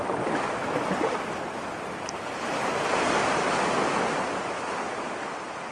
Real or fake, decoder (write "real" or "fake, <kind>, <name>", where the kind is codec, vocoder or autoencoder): real